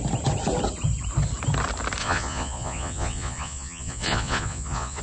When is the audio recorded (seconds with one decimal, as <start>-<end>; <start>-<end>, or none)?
0.0-2.0